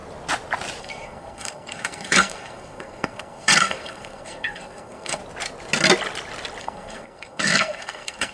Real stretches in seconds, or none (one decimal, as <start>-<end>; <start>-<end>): 0.0-0.8; 5.2-6.6